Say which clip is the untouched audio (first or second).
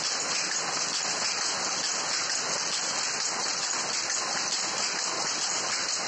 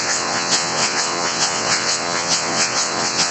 first